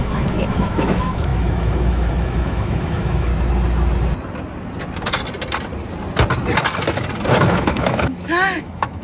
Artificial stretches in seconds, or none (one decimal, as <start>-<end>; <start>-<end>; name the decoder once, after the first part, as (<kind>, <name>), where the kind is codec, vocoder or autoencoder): 0.0-3.3 (autoencoder, DAC-VAE); 7.3-9.0